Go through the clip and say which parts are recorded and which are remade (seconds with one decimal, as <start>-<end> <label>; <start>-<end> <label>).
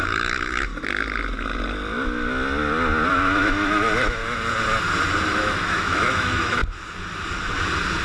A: 0.0-0.7 remade; 0.7-3.1 recorded; 3.1-4.2 remade; 4.2-5.4 recorded; 5.4-6.6 remade; 6.6-8.0 recorded